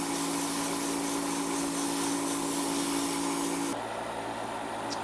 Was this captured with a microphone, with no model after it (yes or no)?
yes